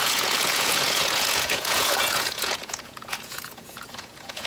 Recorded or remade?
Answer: remade